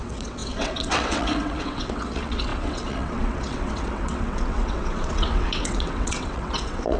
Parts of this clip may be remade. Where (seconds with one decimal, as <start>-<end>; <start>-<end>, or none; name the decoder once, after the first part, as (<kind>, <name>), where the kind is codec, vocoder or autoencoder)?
0.0-7.0 (vocoder, WaveNeXt)